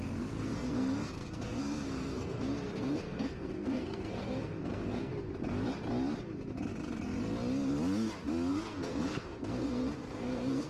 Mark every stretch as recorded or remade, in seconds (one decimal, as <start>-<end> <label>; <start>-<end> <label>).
0.0-5.1 remade; 5.1-8.5 recorded; 8.5-10.7 remade